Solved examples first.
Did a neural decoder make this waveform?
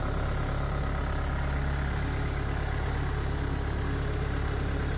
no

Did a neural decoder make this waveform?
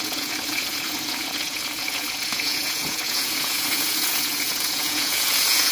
yes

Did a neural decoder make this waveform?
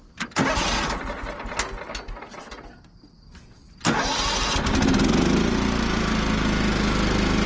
no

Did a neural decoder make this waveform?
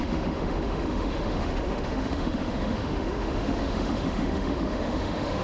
yes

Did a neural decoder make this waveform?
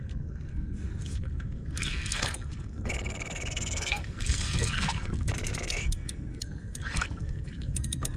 yes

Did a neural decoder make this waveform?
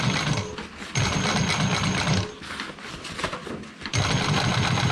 no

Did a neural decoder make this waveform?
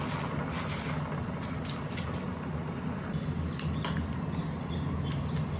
no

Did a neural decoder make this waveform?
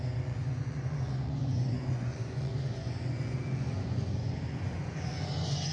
yes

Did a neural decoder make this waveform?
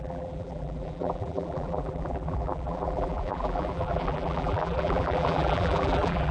yes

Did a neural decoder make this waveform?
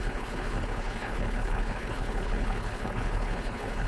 yes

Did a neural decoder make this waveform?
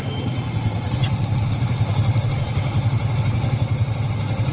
no